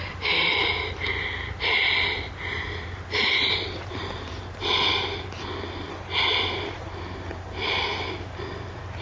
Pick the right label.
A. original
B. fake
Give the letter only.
A